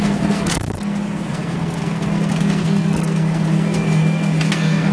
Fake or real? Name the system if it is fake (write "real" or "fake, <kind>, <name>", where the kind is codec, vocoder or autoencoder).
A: fake, codec, SNAC